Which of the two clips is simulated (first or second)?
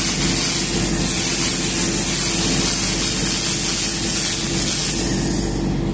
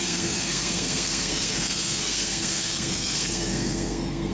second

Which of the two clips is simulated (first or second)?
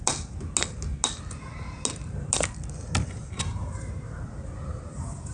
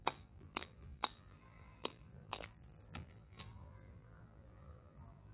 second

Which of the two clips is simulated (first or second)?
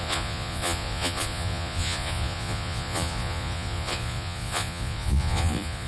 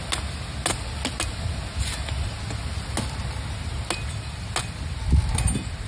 first